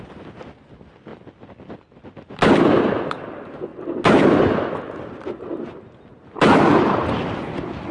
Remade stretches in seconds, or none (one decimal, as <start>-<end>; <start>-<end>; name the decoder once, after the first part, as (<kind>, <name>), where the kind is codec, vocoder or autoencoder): none